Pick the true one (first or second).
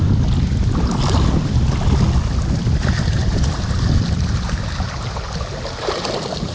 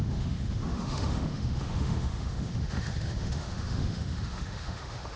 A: first